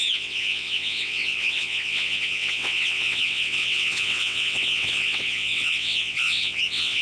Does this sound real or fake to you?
fake